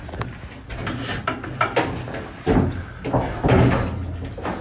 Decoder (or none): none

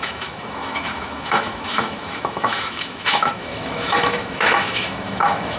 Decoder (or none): autoencoder, DAC-VAE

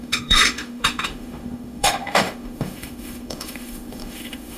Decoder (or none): autoencoder, DAC-VAE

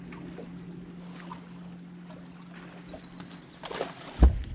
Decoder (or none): none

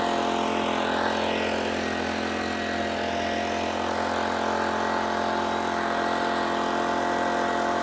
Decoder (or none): none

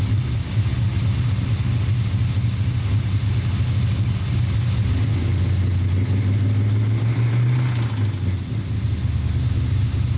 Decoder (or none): none